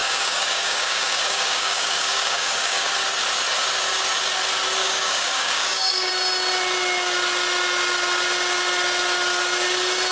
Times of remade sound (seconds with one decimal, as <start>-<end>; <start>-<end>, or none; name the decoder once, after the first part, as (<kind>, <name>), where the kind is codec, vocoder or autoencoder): 0.0-2.9 (codec, DAC); 4.8-6.1